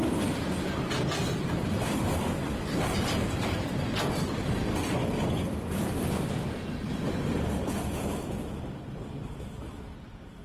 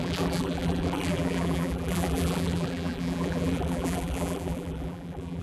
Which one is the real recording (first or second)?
first